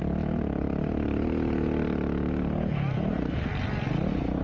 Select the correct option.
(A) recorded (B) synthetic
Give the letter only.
A